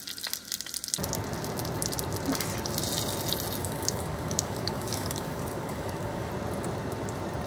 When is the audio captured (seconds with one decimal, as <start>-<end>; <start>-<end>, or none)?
0.0-3.6; 6.3-7.5